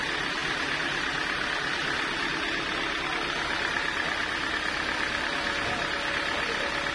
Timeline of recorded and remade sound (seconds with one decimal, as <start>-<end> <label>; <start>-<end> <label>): 0.0-6.9 recorded